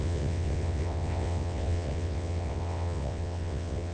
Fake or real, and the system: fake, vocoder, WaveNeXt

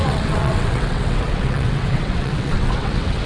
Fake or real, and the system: fake, vocoder, WaveNeXt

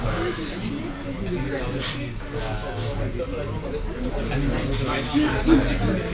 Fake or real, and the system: real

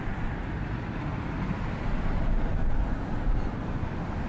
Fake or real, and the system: real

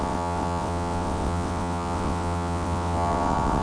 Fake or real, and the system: fake, vocoder, WaveNeXt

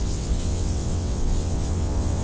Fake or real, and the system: fake, vocoder, WaveNeXt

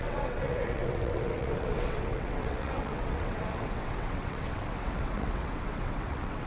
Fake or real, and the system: fake, vocoder, WaveNeXt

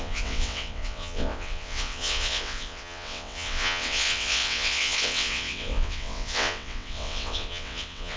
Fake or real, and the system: fake, vocoder, WaveNeXt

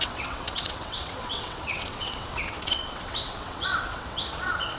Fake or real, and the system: fake, vocoder, WaveNeXt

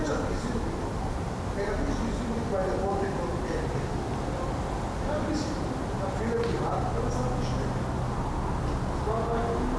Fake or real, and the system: real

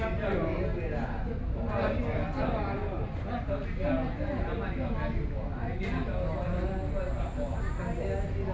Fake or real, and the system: real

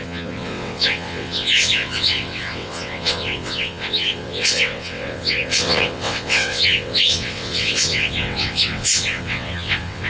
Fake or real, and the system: fake, vocoder, WaveNeXt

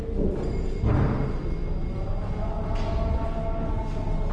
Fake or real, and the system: real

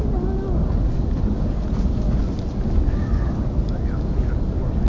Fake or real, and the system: real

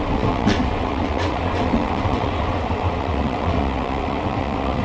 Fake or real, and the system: fake, vocoder, WaveNeXt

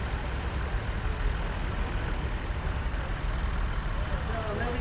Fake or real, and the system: real